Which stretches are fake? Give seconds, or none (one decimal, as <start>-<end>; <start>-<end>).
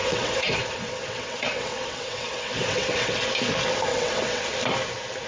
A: 0.0-3.2; 3.9-4.4